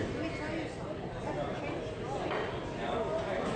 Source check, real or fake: real